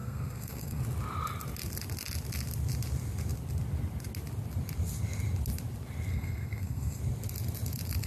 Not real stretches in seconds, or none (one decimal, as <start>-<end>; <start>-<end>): 0.0-0.8; 6.1-7.0